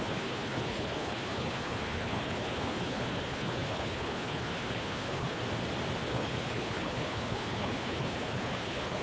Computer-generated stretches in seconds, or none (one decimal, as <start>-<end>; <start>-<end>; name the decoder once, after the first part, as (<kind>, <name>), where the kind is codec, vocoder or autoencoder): 0.0-5.4 (codec, HILCodec); 6.1-9.0